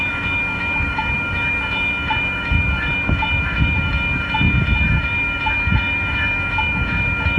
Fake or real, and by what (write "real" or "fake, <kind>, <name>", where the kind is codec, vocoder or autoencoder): fake, autoencoder, DAC-VAE